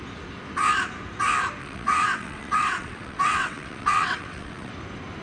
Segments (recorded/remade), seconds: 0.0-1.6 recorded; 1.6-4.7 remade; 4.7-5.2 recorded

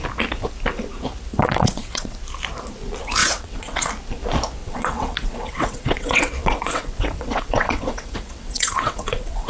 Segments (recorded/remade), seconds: 0.0-1.3 recorded; 1.3-2.2 remade; 2.2-3.2 recorded; 3.2-3.9 remade; 3.9-4.6 recorded; 4.6-9.5 remade

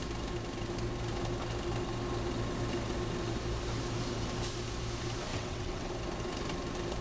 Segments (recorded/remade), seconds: 0.0-5.3 recorded; 5.3-5.9 remade; 5.9-7.0 recorded

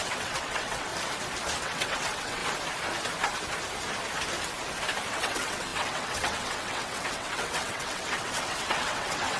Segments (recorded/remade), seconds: 0.0-0.9 remade; 0.9-1.6 recorded; 1.6-2.4 remade; 2.4-5.1 recorded; 5.1-9.4 remade